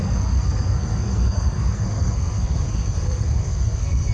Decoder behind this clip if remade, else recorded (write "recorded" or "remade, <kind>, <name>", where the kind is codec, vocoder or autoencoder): remade, codec, SNAC